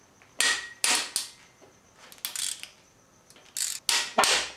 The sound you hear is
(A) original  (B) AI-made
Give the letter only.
A